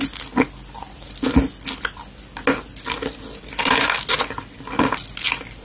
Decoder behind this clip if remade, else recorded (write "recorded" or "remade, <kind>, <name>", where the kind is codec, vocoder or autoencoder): recorded